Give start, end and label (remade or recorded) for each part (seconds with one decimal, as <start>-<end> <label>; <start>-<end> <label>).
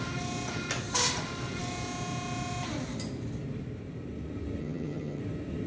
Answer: 0.0-4.6 recorded; 4.6-5.2 remade; 5.2-5.7 recorded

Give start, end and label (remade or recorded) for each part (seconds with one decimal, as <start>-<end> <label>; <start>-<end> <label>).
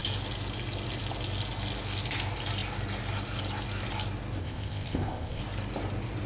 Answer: 0.0-4.4 recorded; 4.4-5.4 remade; 5.4-6.3 recorded